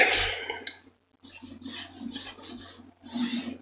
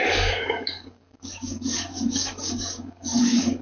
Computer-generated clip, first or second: second